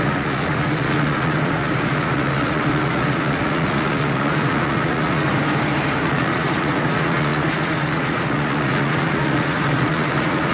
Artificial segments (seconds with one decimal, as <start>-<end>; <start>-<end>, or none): 0.0-5.3; 6.0-10.5